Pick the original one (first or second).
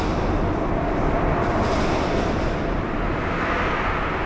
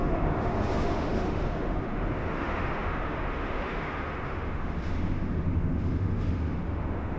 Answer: first